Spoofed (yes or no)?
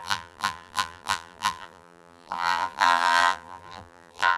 yes